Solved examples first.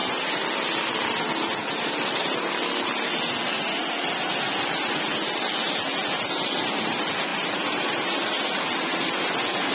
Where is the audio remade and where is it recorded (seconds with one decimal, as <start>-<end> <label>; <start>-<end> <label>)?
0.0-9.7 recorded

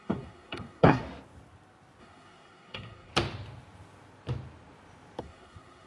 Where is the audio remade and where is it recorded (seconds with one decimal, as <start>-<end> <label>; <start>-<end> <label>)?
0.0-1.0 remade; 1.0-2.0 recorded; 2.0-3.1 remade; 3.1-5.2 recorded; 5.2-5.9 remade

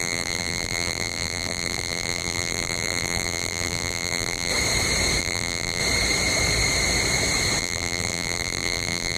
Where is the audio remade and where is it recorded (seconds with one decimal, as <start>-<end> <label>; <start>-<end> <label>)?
0.0-4.5 remade; 4.5-5.2 recorded; 5.2-5.8 remade; 5.8-7.6 recorded; 7.6-9.2 remade

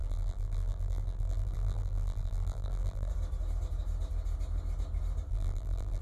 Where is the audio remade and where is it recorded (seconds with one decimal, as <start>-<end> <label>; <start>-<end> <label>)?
0.0-3.1 remade; 3.1-5.3 recorded; 5.3-6.0 remade

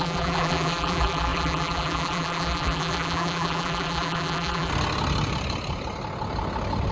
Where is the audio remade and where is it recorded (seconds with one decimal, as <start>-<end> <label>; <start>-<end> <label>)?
0.0-4.7 remade; 4.7-6.9 recorded

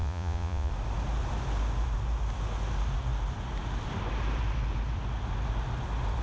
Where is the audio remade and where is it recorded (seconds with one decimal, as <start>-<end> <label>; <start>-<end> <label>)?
0.0-0.7 remade; 0.7-6.2 recorded

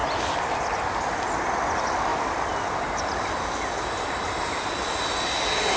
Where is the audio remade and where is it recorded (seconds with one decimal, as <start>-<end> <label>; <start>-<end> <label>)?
0.0-5.8 recorded

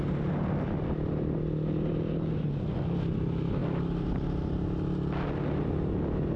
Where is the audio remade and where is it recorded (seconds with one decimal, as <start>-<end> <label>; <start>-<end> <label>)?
0.0-6.4 recorded